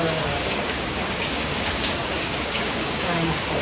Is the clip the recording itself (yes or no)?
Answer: no